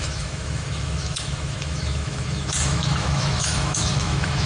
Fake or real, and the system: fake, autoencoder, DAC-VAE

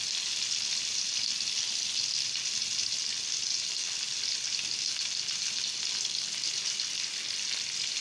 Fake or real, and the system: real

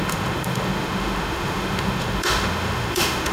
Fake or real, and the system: fake, autoencoder, DAC-VAE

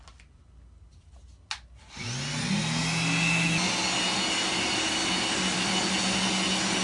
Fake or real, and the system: real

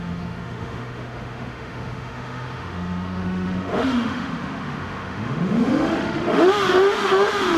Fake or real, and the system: fake, autoencoder, DAC-VAE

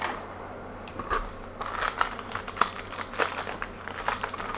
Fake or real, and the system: real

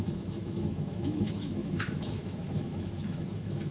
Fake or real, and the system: fake, autoencoder, DAC-VAE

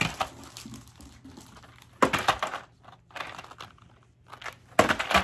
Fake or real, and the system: real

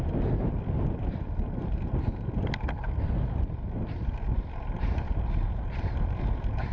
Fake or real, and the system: real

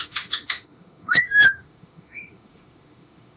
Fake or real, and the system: fake, autoencoder, DAC-VAE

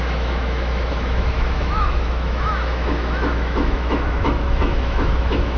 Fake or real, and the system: fake, autoencoder, DAC-VAE